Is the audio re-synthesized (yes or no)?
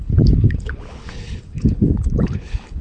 yes